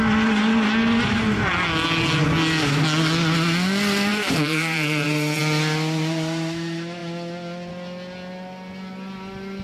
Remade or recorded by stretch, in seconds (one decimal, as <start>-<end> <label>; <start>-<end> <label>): 0.0-4.1 recorded; 4.1-5.4 remade; 5.4-9.6 recorded